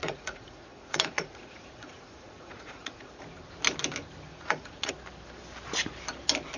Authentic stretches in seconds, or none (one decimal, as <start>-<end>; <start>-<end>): 3.2-4.3; 4.9-6.6